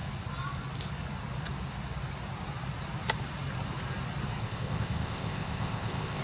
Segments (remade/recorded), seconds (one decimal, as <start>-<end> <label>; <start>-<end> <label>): 0.0-4.4 recorded; 4.4-6.2 remade